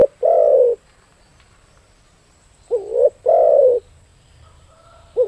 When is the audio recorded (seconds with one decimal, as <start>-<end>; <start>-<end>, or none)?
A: 0.0-4.1